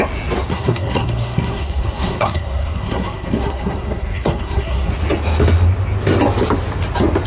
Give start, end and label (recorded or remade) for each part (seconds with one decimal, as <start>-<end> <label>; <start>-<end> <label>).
0.0-0.5 recorded; 0.5-4.9 remade; 4.9-7.3 recorded